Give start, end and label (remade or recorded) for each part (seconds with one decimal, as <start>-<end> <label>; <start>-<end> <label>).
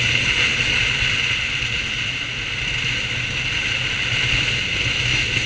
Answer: 0.0-5.5 recorded